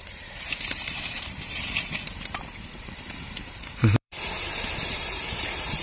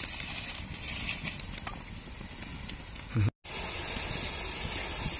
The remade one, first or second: first